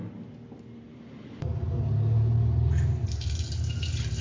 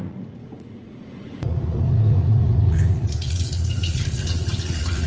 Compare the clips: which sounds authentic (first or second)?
first